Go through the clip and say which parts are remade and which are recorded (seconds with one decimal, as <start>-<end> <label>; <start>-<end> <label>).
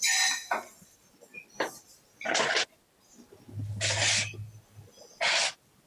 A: 0.0-5.9 recorded